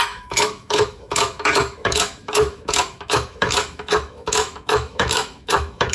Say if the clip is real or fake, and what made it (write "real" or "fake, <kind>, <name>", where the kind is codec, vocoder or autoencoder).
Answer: fake, autoencoder, DAC-VAE